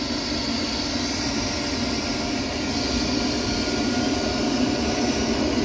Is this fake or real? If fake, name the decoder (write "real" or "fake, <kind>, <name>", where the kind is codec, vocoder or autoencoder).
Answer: real